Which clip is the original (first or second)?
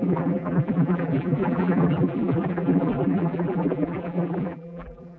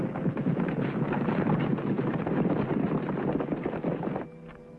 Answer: second